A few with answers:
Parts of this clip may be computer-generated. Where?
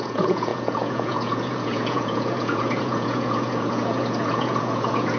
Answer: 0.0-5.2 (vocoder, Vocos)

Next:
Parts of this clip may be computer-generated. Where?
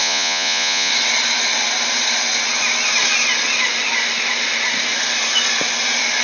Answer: 0.0-0.9 (vocoder, Vocos)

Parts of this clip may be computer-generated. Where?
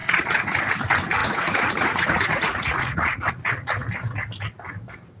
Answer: 0.0-0.6 (vocoder, Vocos); 1.2-3.3